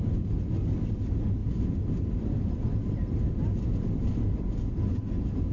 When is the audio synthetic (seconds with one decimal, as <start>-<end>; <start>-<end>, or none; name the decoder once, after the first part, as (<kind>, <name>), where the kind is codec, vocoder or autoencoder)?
1.4-4.7 (vocoder, BigVGAN v2)